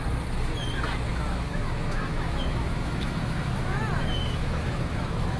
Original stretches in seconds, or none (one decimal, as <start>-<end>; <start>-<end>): 0.0-1.1; 3.8-4.2